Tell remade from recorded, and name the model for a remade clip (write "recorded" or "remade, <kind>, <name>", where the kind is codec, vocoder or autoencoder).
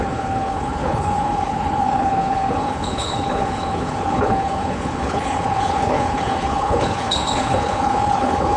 remade, codec, HILCodec